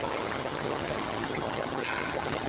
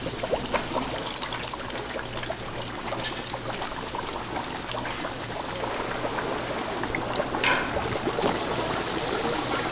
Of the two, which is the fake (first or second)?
first